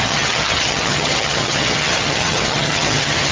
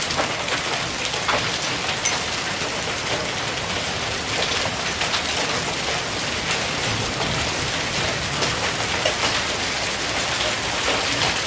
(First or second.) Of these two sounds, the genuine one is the second